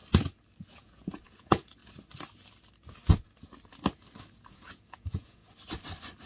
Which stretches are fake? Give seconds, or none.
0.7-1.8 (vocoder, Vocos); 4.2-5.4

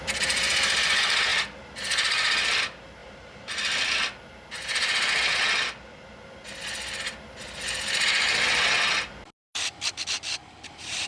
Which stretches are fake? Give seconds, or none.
3.0-4.0 (vocoder, BigVGAN v2); 10.4-11.1

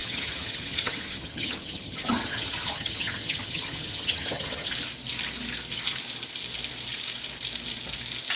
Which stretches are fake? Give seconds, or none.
0.0-4.7 (vocoder, HiFi-GAN)

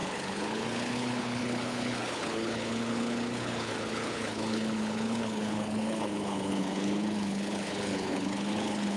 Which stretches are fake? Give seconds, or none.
0.0-9.0 (codec, HILCodec)